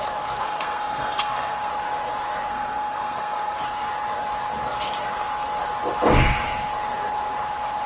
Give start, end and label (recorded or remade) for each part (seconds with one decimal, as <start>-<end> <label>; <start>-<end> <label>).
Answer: 0.0-0.4 recorded; 0.4-1.7 remade; 1.7-2.5 recorded; 2.5-3.6 remade; 3.6-7.9 recorded

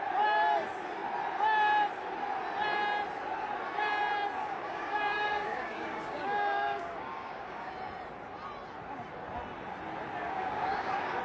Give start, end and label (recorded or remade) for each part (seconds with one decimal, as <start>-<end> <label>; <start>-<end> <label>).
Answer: 0.0-4.4 recorded; 4.4-7.7 remade; 7.7-10.2 recorded; 10.2-11.2 remade